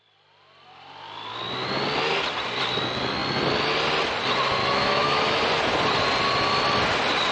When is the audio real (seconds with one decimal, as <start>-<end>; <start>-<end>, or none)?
0.0-4.6; 5.4-7.3